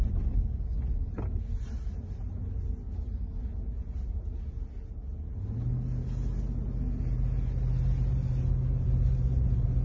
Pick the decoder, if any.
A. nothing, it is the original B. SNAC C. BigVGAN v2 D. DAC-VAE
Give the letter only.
A